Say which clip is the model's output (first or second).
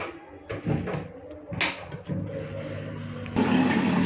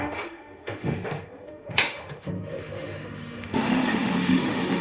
second